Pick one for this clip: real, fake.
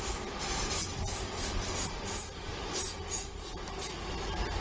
real